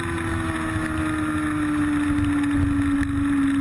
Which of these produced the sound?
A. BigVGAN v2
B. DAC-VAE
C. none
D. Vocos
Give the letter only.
C